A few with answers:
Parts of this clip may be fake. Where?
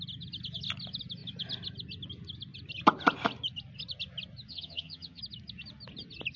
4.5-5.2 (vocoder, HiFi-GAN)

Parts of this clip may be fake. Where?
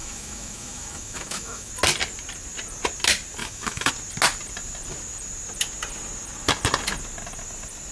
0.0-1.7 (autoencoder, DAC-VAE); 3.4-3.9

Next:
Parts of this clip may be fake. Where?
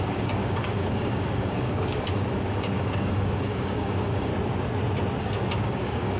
0.0-4.3 (codec, DAC); 5.2-6.2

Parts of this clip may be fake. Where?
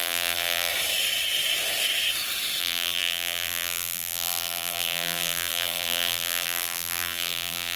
0.0-0.7 (vocoder, BigVGAN v2); 2.6-7.8